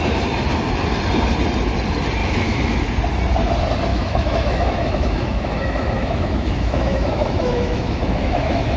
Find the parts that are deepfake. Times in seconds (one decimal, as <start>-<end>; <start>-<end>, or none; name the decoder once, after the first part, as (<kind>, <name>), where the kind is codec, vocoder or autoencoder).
2.2-2.8 (autoencoder, DAC-VAE); 3.9-8.8